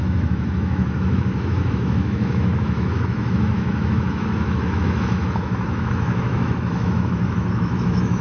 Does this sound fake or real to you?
fake